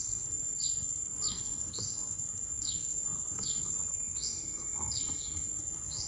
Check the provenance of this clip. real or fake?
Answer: fake